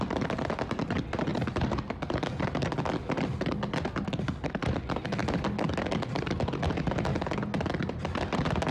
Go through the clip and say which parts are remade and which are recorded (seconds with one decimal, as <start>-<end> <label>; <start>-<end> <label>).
0.0-8.7 recorded